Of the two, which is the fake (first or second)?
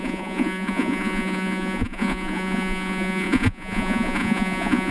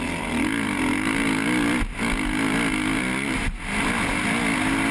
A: first